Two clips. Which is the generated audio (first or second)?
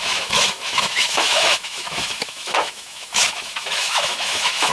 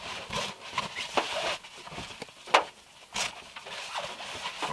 first